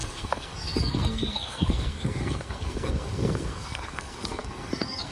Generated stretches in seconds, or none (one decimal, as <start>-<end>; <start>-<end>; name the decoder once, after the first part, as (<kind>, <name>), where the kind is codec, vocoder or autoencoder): 0.0-5.1 (codec, SNAC)